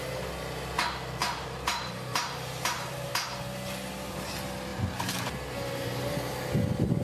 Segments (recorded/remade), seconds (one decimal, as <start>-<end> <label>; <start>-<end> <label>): 0.0-1.2 recorded; 1.2-3.1 remade; 3.1-4.7 recorded; 4.7-5.2 remade; 5.2-7.0 recorded